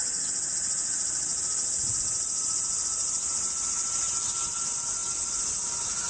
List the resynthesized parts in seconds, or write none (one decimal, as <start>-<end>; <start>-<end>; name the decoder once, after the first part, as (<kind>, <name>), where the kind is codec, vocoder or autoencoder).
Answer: none